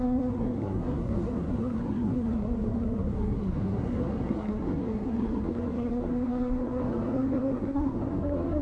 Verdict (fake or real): fake